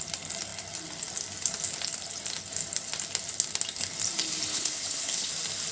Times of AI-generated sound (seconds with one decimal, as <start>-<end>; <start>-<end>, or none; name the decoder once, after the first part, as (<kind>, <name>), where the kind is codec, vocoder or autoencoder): 4.5-5.3 (codec, HILCodec)